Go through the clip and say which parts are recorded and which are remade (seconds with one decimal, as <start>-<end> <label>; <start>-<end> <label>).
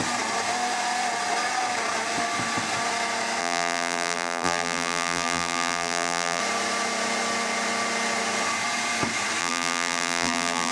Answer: 0.0-3.4 recorded; 3.4-6.4 remade; 6.4-9.4 recorded; 9.4-10.7 remade